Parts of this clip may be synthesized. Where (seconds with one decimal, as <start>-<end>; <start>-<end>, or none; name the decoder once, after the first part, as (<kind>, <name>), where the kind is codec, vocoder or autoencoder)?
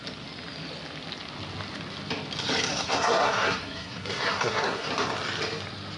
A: 2.7-4.9 (codec, SNAC)